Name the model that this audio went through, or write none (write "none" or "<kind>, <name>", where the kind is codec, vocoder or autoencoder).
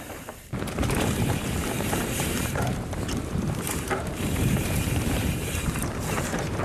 vocoder, BigVGAN v2